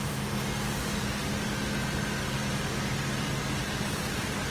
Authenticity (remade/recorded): recorded